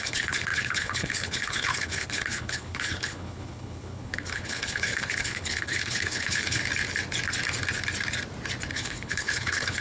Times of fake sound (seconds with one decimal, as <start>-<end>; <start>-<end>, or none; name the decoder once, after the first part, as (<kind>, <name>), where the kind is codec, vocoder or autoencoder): 0.0-6.6 (codec, HILCodec); 8.7-9.8